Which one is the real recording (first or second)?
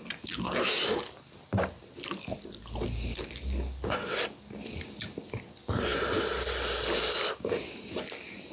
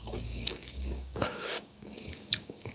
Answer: first